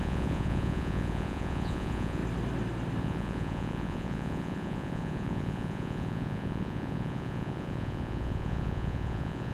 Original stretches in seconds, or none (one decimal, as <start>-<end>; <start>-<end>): 2.2-3.0